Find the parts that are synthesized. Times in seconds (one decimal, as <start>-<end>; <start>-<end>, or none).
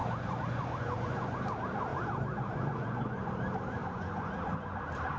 0.0-1.4; 1.9-3.3; 3.8-4.8